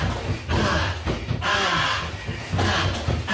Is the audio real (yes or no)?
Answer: yes